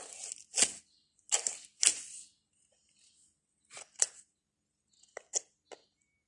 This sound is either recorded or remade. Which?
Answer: recorded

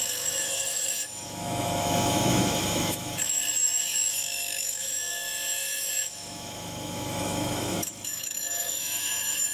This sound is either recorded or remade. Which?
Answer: remade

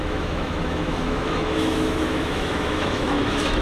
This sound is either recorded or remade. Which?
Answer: remade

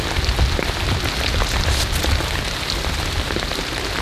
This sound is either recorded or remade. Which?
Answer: recorded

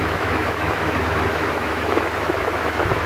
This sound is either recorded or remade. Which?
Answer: remade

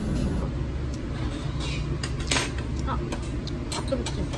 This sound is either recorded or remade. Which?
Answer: recorded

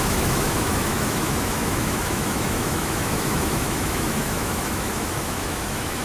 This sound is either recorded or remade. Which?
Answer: remade